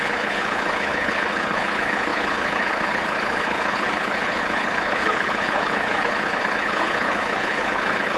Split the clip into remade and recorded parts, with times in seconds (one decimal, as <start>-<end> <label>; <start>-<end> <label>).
0.0-8.2 remade